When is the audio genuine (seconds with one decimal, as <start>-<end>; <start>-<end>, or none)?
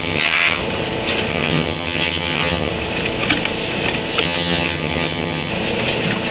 0.6-1.3; 2.7-4.2; 5.5-6.3